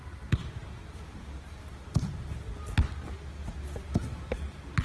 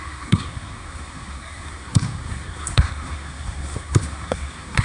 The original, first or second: first